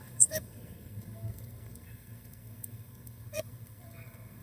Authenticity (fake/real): fake